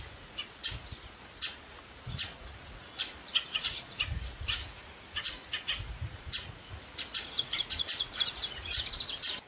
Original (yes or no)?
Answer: no